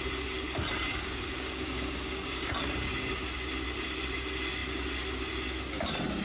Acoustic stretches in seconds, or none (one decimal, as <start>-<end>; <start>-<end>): 0.0-0.9; 2.5-6.2